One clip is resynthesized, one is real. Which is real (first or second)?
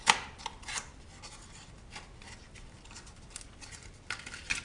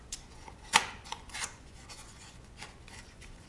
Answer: first